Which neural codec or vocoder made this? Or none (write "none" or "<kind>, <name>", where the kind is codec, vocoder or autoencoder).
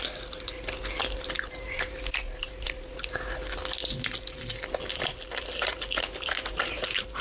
none